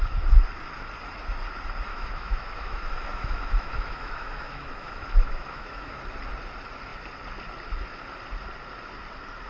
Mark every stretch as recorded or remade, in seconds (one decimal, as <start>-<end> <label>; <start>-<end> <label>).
0.0-1.9 recorded; 1.9-6.0 remade; 6.0-9.5 recorded